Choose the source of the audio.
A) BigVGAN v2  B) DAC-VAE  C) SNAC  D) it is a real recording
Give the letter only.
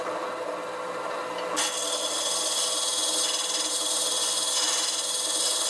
D